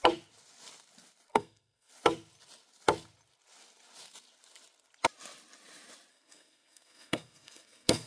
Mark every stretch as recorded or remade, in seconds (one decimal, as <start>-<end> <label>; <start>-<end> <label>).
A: 0.0-1.3 recorded; 1.3-1.9 remade; 1.9-6.1 recorded; 6.1-8.1 remade